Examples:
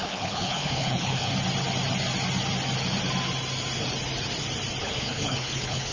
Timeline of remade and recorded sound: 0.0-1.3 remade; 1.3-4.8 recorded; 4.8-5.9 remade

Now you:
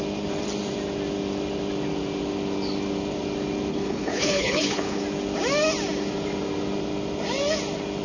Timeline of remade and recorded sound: 0.0-3.7 recorded; 3.7-5.0 remade; 5.0-8.0 recorded